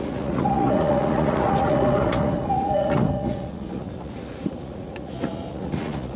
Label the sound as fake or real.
fake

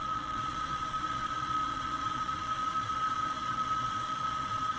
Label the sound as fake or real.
fake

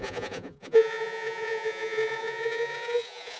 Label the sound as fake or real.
fake